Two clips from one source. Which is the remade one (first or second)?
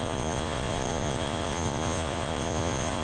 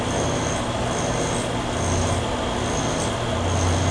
first